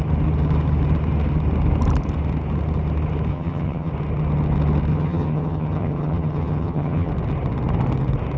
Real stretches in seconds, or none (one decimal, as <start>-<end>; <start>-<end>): 0.0-3.3; 3.9-4.9; 7.1-8.4